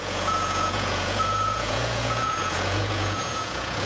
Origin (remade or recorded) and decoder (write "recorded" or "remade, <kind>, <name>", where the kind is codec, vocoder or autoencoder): remade, vocoder, Vocos